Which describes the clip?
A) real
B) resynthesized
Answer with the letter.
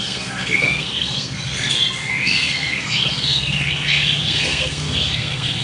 B